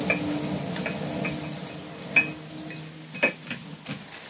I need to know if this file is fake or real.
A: real